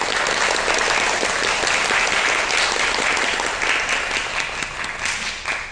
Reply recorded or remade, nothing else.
recorded